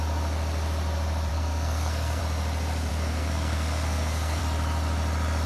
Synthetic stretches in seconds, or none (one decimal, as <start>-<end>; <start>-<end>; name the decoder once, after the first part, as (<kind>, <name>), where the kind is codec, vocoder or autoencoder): 1.3-2.2 (codec, SNAC); 2.9-4.4